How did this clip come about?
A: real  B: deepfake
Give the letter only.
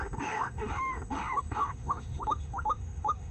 B